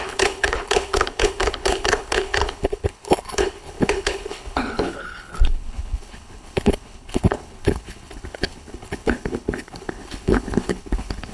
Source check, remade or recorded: remade